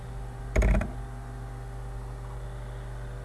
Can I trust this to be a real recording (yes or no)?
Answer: yes